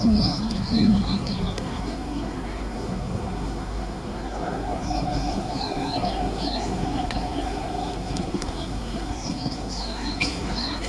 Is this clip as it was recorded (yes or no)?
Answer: no